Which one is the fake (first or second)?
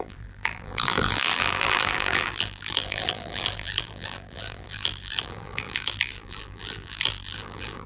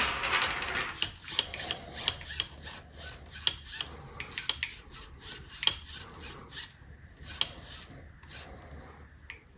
first